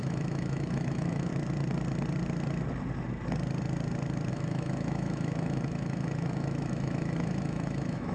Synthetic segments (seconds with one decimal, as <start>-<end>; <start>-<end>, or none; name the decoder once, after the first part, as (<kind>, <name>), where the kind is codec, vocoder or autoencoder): 0.0-1.3 (autoencoder, DAC-VAE); 4.3-8.1